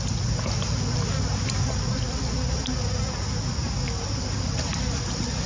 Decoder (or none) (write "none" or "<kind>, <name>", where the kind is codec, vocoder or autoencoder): none